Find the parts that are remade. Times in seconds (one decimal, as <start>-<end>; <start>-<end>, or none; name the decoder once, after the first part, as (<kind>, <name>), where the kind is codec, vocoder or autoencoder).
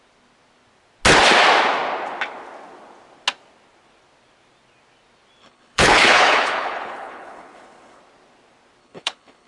5.4-8.0 (codec, HILCodec); 8.8-9.5